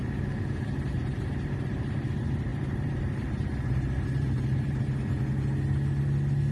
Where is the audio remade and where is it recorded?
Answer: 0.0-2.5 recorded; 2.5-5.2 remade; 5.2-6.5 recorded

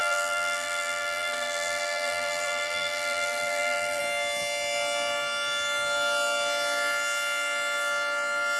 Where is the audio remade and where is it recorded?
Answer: 0.0-4.0 remade; 4.0-8.6 recorded

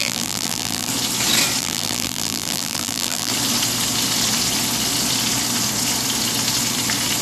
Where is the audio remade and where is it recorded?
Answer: 0.0-0.9 remade; 0.9-1.6 recorded; 1.6-3.3 remade; 3.3-7.2 recorded

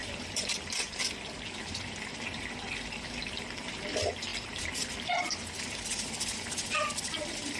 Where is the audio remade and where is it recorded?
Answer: 0.0-7.6 recorded

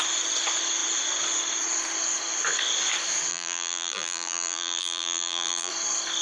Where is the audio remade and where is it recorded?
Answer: 0.0-3.3 recorded; 3.3-5.7 remade; 5.7-6.2 recorded